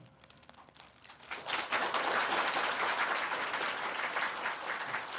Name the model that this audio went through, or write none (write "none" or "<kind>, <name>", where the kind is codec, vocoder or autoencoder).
none